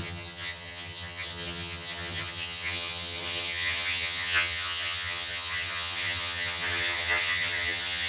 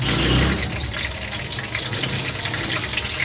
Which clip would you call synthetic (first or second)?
first